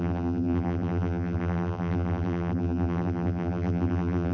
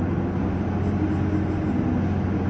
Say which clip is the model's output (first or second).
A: first